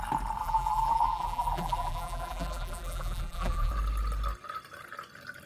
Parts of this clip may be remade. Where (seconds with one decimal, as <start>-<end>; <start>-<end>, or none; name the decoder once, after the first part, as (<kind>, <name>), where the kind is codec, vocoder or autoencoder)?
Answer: 0.4-3.7 (vocoder, BigVGAN v2)